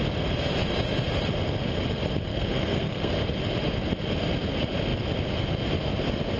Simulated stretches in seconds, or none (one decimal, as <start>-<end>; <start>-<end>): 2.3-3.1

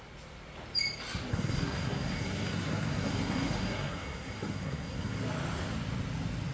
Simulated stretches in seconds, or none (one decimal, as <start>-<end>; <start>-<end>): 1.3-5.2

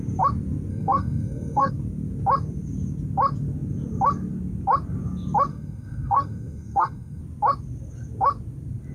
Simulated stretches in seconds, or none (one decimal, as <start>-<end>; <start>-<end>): 0.7-1.7; 5.5-7.2

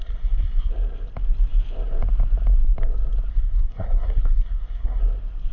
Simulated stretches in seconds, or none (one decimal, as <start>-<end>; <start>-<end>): 0.0-0.7; 3.3-5.0

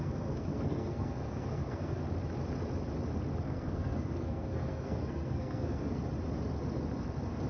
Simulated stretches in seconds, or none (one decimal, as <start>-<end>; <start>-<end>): 0.0-2.0; 3.4-6.0

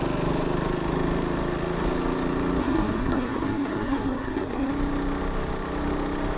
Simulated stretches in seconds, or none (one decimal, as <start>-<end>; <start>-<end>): 2.6-4.7

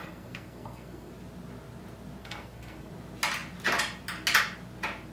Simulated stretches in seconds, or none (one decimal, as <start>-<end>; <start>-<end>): 0.0-1.1; 2.2-2.9